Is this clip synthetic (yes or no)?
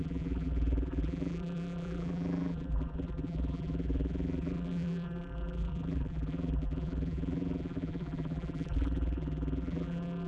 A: yes